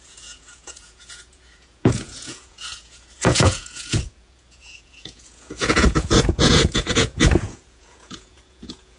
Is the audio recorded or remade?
remade